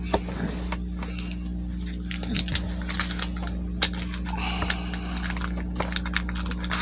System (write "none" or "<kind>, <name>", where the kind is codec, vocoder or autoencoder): none